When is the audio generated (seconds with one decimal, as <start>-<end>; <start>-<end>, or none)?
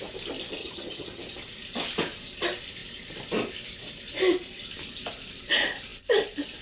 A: 0.6-1.2